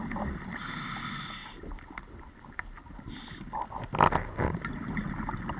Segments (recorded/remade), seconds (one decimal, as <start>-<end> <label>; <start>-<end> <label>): 0.0-5.6 recorded